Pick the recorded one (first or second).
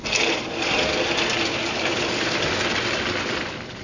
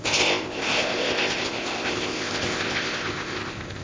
first